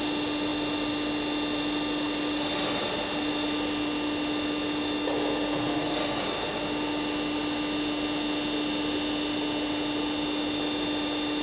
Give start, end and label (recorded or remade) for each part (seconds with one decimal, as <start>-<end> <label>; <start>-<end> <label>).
0.0-11.4 recorded